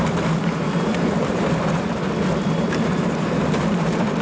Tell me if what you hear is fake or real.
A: fake